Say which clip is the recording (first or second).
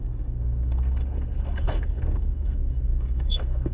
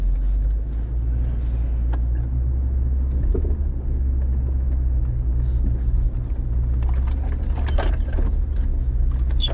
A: second